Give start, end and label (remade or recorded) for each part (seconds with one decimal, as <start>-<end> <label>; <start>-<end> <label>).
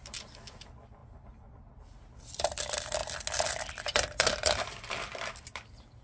0.0-6.0 recorded